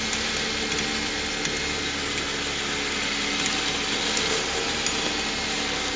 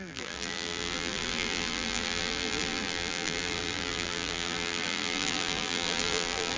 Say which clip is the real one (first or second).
first